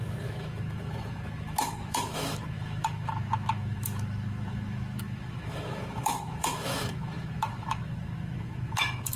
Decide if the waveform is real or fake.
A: fake